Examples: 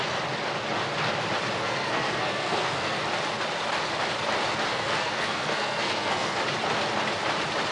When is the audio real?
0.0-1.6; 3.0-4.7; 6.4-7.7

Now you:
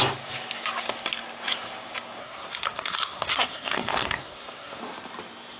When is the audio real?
0.0-2.2; 4.8-5.6